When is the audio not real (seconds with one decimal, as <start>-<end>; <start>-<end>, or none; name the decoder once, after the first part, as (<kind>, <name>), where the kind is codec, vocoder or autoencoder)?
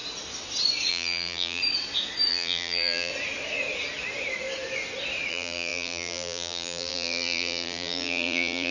0.9-1.6 (vocoder, BigVGAN v2); 2.3-3.1; 5.3-8.7